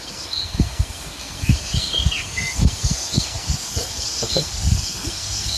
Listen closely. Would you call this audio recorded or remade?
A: remade